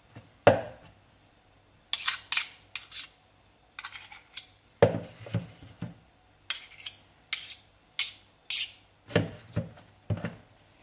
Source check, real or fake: real